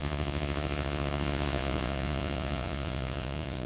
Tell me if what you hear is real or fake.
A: fake